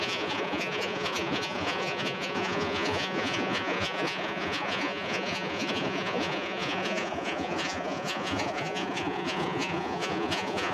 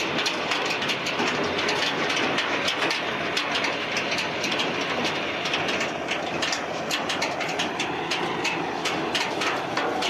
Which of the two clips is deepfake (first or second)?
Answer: first